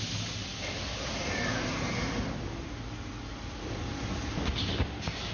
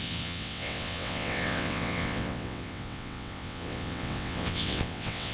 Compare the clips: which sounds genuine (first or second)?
first